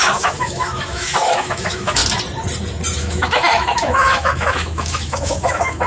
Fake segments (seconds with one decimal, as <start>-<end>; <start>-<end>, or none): 0.0-2.0; 3.0-5.9